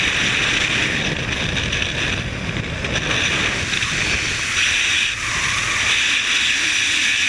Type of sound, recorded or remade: recorded